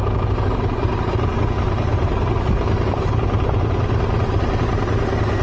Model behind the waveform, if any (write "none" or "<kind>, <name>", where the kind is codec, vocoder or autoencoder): none